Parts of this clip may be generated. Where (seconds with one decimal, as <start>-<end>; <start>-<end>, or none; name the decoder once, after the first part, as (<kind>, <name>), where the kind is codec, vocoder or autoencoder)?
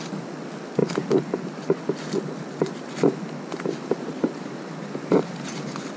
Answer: none